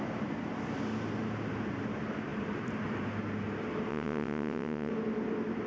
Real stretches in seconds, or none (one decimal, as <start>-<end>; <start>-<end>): 0.0-3.9; 4.9-5.7